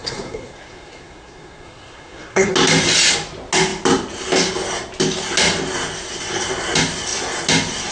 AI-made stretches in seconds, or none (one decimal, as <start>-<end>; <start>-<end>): 0.0-2.5